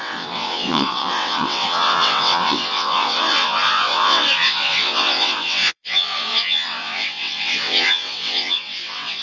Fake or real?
fake